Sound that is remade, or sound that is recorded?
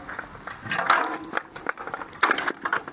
recorded